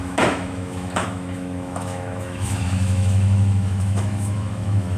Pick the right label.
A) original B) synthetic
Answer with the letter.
B